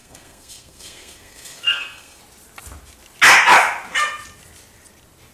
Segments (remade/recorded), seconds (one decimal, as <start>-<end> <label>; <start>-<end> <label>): 0.0-2.2 remade; 2.2-5.3 recorded